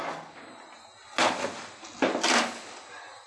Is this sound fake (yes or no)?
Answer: no